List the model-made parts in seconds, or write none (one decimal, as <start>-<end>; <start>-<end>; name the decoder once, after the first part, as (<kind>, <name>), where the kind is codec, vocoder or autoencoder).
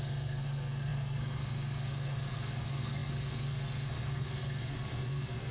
0.0-5.5 (codec, SNAC)